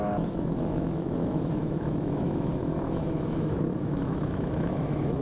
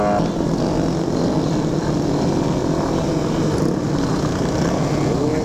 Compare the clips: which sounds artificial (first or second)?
first